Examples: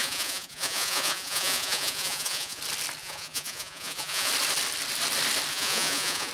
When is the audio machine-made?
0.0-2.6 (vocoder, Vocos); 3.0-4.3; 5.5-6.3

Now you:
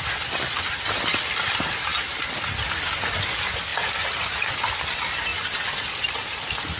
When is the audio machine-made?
0.0-5.3 (vocoder, BigVGAN v2); 5.9-6.8

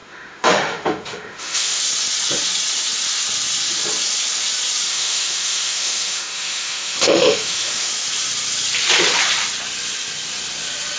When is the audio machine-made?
0.0-1.8 (autoencoder, DAC-VAE); 4.9-7.9

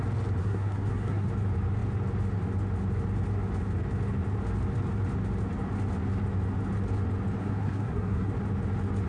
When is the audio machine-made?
0.4-1.3 (codec, SNAC); 7.4-8.3

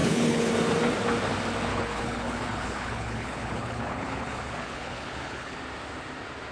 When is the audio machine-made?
0.0-0.5 (codec, HILCodec); 1.7-5.6

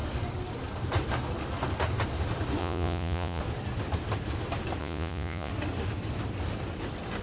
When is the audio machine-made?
2.6-3.4 (vocoder, Vocos); 4.8-5.5